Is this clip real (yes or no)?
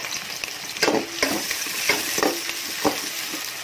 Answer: yes